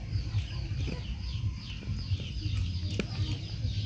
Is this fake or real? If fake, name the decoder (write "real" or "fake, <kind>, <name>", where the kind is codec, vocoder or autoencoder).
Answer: real